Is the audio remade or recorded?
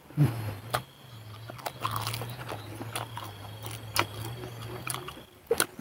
recorded